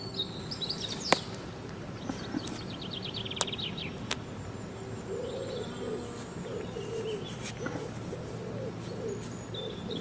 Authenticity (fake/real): real